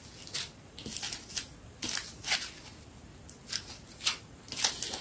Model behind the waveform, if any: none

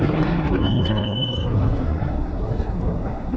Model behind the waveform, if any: codec, SNAC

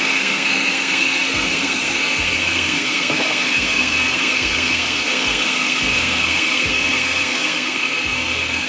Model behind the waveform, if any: codec, SNAC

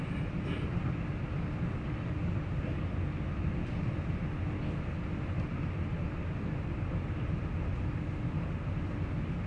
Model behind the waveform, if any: none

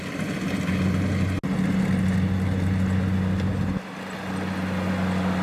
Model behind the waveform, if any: none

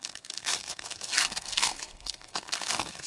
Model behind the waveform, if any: codec, SNAC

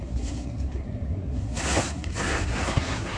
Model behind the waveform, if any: codec, SNAC